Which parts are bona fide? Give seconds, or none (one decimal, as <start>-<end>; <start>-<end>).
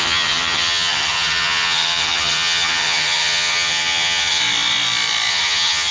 4.4-5.3